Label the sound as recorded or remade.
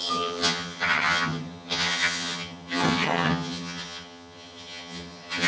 remade